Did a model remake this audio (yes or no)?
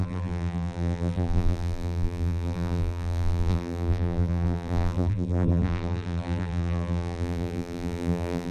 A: yes